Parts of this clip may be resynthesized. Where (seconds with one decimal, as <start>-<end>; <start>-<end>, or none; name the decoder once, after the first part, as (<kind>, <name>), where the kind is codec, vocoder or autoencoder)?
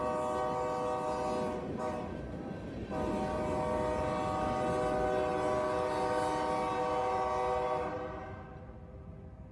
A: none